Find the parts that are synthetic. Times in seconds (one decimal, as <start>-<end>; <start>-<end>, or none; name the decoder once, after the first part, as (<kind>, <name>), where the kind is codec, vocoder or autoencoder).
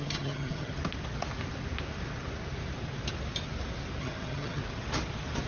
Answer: 0.0-0.7 (vocoder, HiFi-GAN); 4.0-4.6